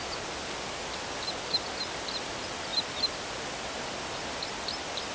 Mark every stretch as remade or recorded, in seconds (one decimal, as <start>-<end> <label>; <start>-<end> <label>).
0.0-5.1 recorded